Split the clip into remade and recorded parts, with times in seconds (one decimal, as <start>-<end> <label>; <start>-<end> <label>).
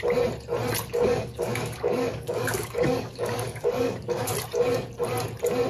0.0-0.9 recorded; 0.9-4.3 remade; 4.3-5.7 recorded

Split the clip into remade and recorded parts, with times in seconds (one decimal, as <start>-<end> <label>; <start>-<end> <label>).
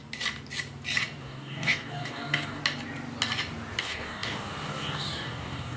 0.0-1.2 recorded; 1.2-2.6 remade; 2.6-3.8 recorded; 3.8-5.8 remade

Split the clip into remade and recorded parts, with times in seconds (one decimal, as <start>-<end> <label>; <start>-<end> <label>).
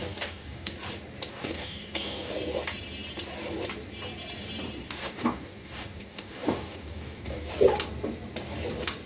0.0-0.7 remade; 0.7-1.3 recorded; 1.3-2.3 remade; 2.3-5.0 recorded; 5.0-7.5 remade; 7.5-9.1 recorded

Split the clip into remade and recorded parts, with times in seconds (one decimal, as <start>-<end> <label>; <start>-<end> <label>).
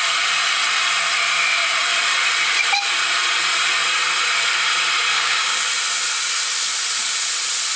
0.0-5.1 recorded; 5.1-5.6 remade; 5.6-7.8 recorded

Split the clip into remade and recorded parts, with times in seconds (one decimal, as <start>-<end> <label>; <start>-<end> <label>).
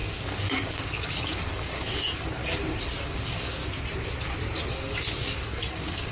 0.0-2.4 remade; 2.4-3.0 recorded; 3.0-3.6 remade; 3.6-4.7 recorded; 4.7-6.1 remade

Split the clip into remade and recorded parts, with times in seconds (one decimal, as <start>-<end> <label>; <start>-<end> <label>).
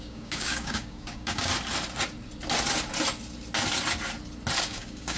0.0-1.5 remade; 1.5-4.6 recorded; 4.6-5.2 remade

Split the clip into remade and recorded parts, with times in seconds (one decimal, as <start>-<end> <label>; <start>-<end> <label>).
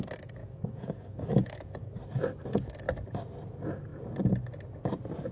0.0-0.4 recorded; 0.4-2.0 remade; 2.0-5.3 recorded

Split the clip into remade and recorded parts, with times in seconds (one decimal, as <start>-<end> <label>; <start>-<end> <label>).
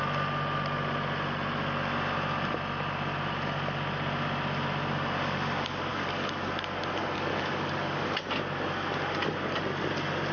0.0-5.9 recorded; 5.9-6.5 remade; 6.5-7.0 recorded; 7.0-8.2 remade; 8.2-10.3 recorded